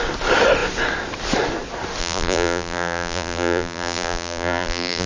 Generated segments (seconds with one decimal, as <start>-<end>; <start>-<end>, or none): 2.0-5.1